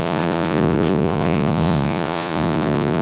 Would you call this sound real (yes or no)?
no